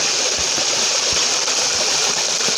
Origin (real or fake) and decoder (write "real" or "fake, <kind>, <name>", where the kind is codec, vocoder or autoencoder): real